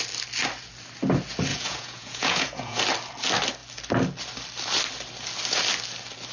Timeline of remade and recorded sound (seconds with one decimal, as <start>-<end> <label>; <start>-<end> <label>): 0.0-1.5 recorded; 1.5-2.8 remade; 2.8-6.3 recorded

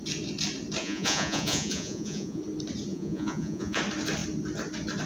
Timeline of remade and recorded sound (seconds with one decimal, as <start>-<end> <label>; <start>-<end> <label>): 0.0-0.8 recorded; 0.8-2.4 remade; 2.4-2.9 recorded; 2.9-3.8 remade; 3.8-5.1 recorded

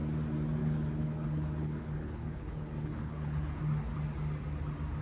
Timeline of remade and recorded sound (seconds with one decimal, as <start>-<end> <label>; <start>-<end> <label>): 0.0-0.6 recorded; 0.6-3.6 remade; 3.6-5.0 recorded